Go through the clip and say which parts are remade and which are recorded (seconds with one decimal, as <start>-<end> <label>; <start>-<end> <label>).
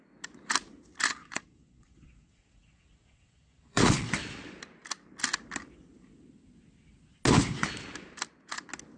0.0-1.2 recorded; 1.2-4.1 remade; 4.1-9.0 recorded